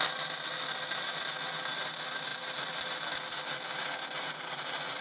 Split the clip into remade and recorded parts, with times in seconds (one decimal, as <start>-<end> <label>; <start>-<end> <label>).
0.0-5.0 recorded